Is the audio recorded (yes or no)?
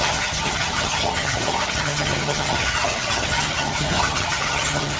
no